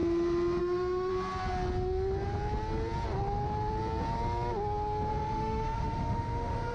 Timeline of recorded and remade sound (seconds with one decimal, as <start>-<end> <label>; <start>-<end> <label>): 0.0-0.6 recorded; 0.6-1.1 remade; 1.1-5.1 recorded; 5.1-6.7 remade